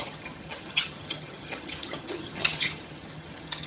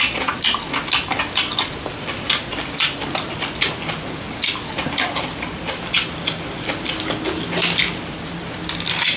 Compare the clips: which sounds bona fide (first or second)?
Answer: second